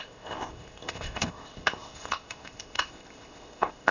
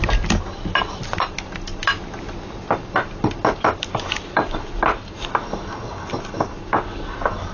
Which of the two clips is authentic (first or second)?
second